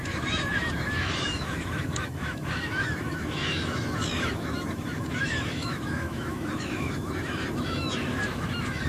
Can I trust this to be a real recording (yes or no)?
no